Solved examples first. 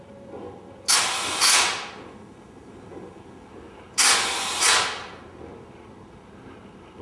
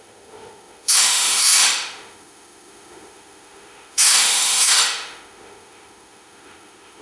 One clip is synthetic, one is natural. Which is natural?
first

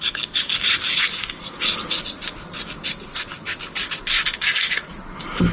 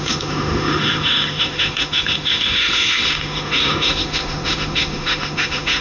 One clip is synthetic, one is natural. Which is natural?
first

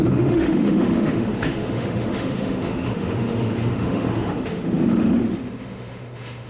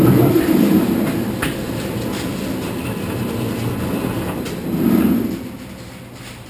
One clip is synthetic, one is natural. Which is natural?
second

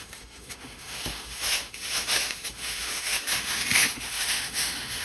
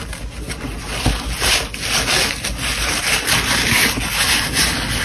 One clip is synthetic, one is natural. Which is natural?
second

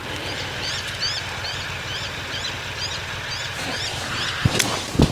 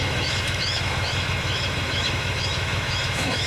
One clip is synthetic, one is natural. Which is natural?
first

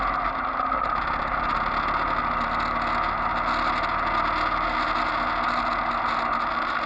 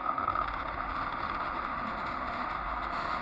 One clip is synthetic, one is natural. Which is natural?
first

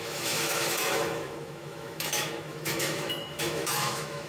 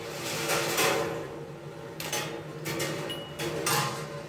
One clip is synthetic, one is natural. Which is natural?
second